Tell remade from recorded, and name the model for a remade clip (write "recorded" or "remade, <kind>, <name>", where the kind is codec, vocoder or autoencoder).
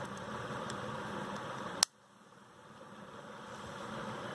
recorded